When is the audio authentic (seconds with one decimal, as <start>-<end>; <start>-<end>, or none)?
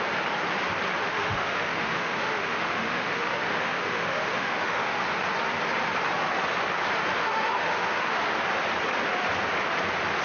0.0-1.0; 5.0-7.2; 8.2-10.2